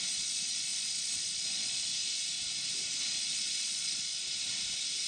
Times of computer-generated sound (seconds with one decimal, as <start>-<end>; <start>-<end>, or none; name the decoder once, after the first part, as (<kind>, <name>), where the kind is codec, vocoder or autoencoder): 0.0-1.9 (vocoder, Vocos); 3.2-4.1